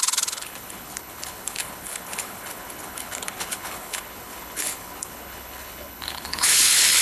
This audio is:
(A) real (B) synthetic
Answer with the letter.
B